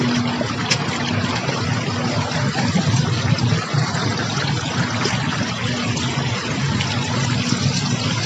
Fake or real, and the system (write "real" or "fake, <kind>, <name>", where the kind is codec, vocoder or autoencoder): real